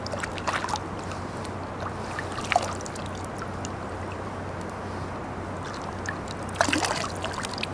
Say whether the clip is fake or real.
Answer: real